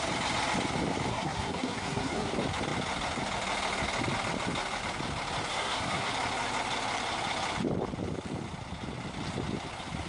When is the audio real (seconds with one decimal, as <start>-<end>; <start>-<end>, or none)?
0.0-1.1; 2.3-5.5; 6.1-10.1